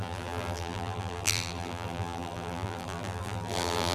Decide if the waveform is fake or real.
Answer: fake